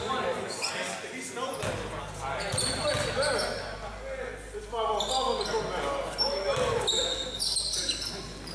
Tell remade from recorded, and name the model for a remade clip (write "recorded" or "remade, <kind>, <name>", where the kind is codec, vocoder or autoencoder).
recorded